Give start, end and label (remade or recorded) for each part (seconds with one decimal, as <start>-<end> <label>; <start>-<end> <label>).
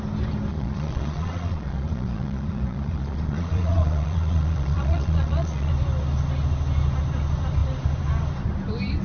0.0-0.5 recorded; 0.5-5.7 remade; 5.7-9.0 recorded